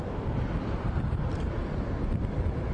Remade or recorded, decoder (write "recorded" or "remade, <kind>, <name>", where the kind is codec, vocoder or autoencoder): recorded